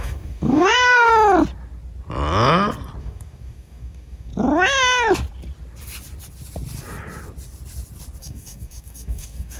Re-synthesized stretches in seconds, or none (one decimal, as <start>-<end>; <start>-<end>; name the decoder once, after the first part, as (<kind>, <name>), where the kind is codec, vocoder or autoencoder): 0.0-1.1 (codec, DAC); 3.0-4.3; 8.2-9.6